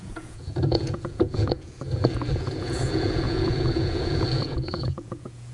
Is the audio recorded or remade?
remade